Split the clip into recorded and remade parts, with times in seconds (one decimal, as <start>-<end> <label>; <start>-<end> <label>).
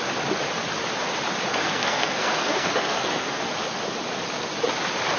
0.0-1.5 recorded; 1.5-3.4 remade; 3.4-5.2 recorded